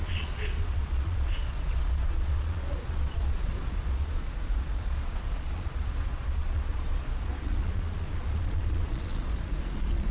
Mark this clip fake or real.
fake